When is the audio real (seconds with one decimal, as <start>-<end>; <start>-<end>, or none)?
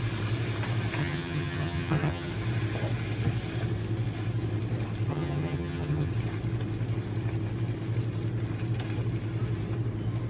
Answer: 0.0-1.0; 2.3-5.1; 6.1-10.3